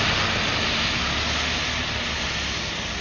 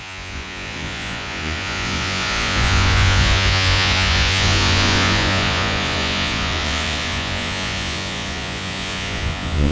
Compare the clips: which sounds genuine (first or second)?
first